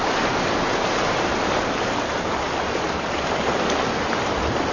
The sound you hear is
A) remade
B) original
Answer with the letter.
B